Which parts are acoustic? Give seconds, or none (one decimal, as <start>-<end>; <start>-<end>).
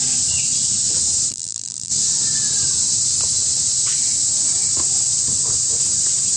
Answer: 0.0-1.3; 1.9-6.4